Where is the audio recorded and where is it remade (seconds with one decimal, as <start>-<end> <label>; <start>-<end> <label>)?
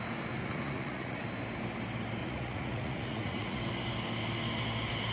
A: 0.0-0.4 recorded; 0.4-1.2 remade; 1.2-2.2 recorded; 2.2-3.6 remade; 3.6-5.1 recorded